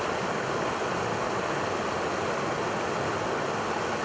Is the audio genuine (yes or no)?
yes